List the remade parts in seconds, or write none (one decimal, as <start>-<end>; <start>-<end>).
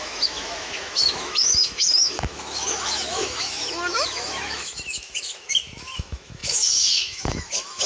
0.0-7.9